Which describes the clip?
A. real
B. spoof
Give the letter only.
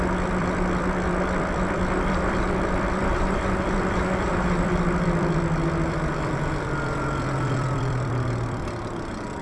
B